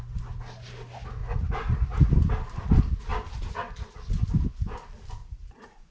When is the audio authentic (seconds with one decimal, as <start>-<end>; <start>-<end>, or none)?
0.0-1.2; 2.1-5.2